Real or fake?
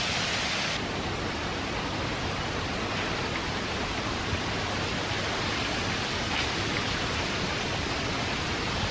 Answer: real